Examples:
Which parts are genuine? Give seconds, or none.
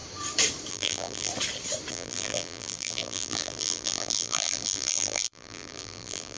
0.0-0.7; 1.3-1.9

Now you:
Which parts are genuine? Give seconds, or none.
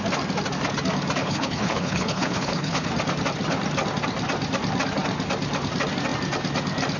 0.0-1.2; 2.9-7.0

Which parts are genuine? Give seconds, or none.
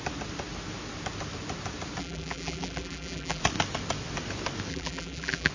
0.0-2.0; 3.4-4.7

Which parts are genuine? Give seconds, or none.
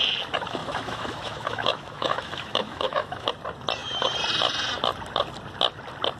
0.0-0.6; 3.3-6.2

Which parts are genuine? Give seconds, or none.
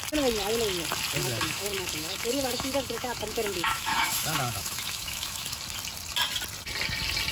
0.0-1.2; 5.6-7.3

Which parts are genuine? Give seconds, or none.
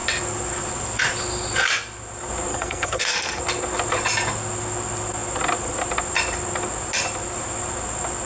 0.0-2.5; 3.4-8.3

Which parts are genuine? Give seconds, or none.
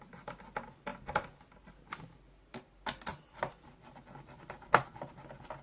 0.0-3.1; 3.6-5.6